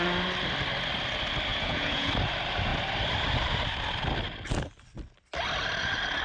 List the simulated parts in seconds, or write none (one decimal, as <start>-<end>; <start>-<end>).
1.5-2.1

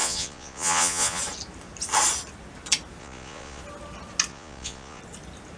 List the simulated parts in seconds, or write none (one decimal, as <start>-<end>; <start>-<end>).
0.0-1.2; 3.0-3.6; 4.3-5.0